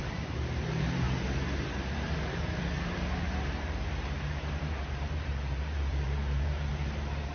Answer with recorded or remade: remade